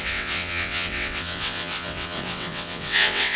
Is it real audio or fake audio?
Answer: fake